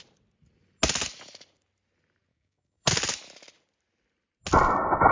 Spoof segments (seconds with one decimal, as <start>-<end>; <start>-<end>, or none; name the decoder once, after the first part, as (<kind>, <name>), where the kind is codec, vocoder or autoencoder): 2.3-2.9 (codec, DAC)